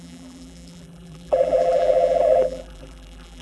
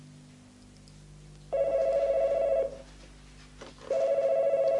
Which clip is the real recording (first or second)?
second